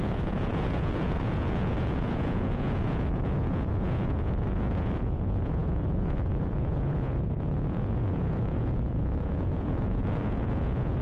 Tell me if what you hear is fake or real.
fake